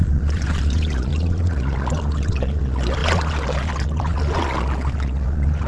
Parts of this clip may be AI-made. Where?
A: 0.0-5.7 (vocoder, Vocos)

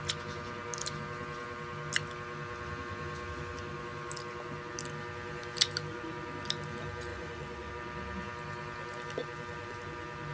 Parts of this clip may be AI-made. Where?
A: 7.1-7.7 (vocoder, Vocos)

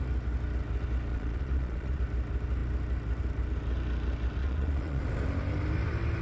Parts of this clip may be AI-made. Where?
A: 1.1-2.0 (vocoder, Vocos); 4.4-5.0

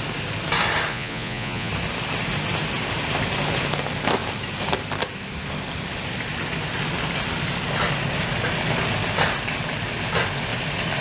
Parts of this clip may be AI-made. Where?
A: 0.9-1.7 (vocoder, Vocos)